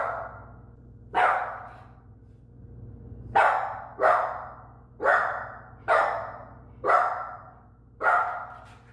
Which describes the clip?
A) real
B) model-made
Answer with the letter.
A